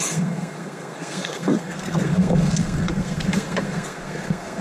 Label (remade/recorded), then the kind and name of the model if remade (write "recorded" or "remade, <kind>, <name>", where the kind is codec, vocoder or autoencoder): remade, codec, SNAC